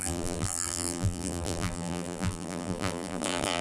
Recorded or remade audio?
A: remade